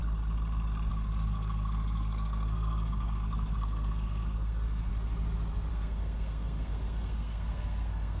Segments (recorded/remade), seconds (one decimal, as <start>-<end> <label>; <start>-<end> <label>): 0.0-0.9 recorded; 0.9-4.9 remade; 4.9-5.7 recorded; 5.7-8.2 remade